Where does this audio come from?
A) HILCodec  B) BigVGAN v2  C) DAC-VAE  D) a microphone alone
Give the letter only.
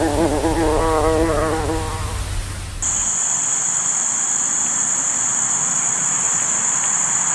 D